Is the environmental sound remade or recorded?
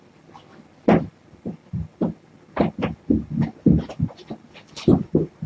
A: recorded